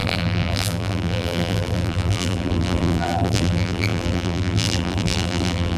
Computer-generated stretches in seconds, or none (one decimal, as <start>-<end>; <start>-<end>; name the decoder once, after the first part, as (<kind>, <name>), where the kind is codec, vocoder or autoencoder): 0.0-5.8 (vocoder, BigVGAN v2)